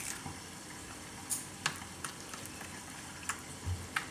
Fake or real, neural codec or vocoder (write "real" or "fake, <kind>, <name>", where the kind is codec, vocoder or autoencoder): real